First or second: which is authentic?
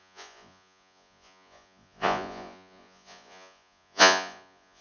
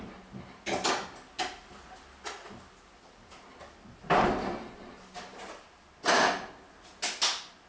second